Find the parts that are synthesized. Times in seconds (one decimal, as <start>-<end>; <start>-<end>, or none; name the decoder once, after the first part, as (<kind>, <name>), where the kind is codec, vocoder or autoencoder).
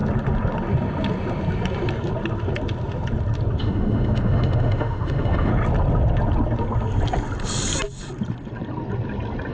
3.6-5.5 (autoencoder, DAC-VAE)